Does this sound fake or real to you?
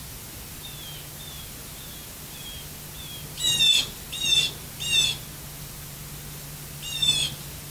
real